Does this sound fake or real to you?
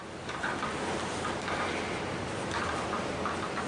real